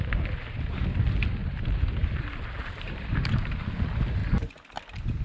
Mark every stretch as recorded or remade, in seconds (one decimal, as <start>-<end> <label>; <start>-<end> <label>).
0.0-1.4 recorded; 1.4-3.5 remade; 3.5-5.2 recorded